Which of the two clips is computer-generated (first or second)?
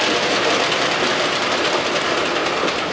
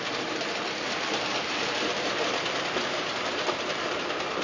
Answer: second